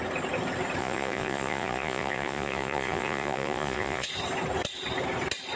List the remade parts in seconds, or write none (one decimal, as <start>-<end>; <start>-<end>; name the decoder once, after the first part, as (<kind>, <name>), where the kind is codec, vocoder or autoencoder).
0.8-4.1 (vocoder, Vocos)

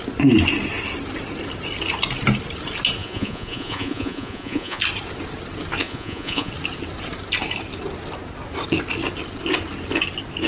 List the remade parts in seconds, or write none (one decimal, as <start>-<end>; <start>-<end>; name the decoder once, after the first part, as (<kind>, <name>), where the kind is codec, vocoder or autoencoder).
3.0-4.8 (vocoder, Vocos); 5.8-6.5